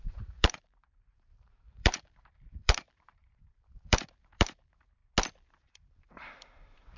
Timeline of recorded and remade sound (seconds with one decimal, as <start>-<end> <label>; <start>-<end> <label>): 0.0-5.0 remade; 5.0-5.5 recorded; 5.5-7.0 remade